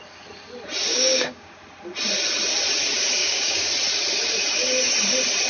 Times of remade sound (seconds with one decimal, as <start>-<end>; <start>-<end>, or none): 0.9-1.5; 3.2-3.7